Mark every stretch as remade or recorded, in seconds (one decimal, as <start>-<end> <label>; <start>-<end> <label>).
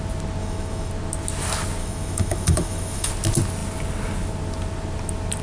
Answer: 0.0-0.4 recorded; 0.4-0.9 remade; 0.9-1.8 recorded; 1.8-3.1 remade; 3.1-5.4 recorded